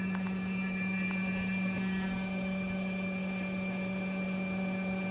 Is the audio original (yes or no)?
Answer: no